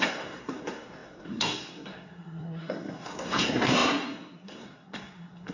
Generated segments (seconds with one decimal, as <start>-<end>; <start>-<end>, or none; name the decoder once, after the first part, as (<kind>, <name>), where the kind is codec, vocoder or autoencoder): 0.0-5.5 (codec, SNAC)